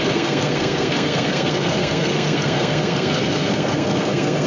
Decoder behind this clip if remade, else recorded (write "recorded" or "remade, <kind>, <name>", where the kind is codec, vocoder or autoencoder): remade, codec, SNAC